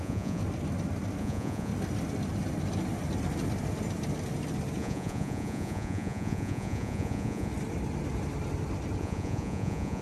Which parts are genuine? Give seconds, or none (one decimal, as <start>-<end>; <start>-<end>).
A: 0.4-1.2; 1.7-4.8; 7.5-9.0